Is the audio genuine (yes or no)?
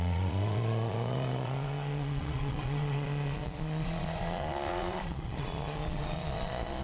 no